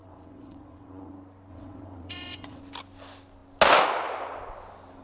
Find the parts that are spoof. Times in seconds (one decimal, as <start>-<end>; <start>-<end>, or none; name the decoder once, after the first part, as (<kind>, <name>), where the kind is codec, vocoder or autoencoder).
0.0-1.1 (vocoder, WaveNeXt); 1.5-2.6